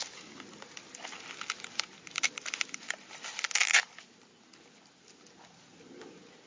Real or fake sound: real